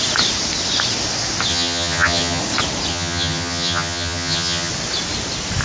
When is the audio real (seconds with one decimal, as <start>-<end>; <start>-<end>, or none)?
0.0-1.5; 2.4-2.9; 4.7-5.6